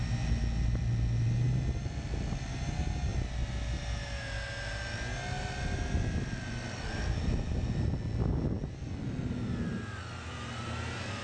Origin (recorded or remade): recorded